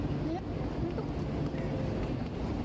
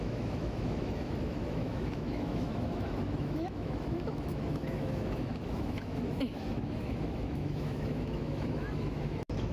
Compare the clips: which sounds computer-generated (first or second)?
second